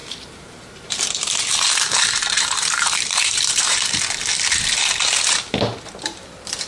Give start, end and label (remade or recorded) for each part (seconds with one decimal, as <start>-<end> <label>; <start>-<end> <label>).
0.0-4.0 remade; 4.0-6.7 recorded